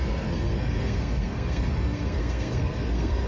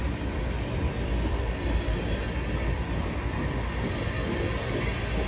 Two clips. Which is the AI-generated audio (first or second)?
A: first